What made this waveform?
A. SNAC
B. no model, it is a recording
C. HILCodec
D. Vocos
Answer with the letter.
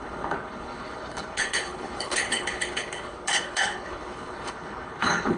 C